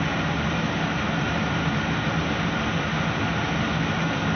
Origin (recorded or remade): recorded